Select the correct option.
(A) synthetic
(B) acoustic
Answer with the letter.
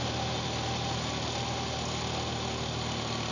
B